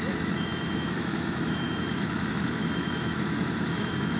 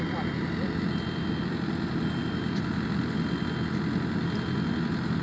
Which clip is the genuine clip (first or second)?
second